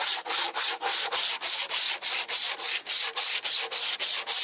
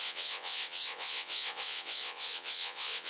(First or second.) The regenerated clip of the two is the second